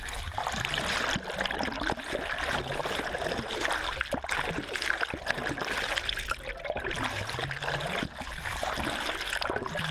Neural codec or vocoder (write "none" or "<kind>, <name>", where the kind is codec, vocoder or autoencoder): none